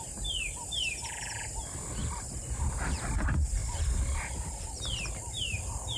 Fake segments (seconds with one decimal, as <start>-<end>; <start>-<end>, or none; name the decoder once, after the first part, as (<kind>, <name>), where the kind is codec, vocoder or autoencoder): 2.0-2.7 (vocoder, BigVGAN v2); 3.6-6.0